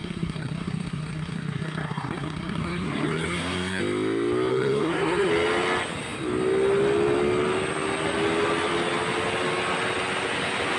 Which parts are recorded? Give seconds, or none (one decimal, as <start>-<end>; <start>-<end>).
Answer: 3.8-4.5; 5.3-10.8